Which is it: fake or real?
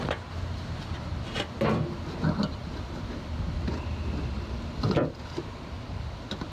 real